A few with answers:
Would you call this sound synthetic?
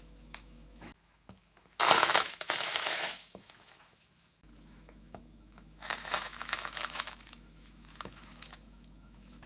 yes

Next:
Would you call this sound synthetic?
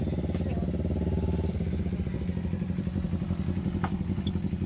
no